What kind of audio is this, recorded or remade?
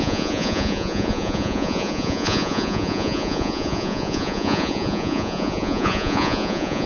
remade